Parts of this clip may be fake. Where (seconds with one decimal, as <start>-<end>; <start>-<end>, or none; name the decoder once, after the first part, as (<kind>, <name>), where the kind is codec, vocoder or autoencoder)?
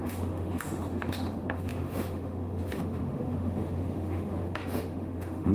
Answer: 0.0-5.5 (autoencoder, DAC-VAE)